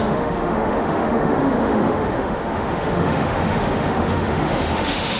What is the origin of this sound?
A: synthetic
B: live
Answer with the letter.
A